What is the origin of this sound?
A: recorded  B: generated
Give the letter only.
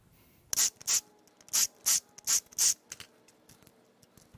A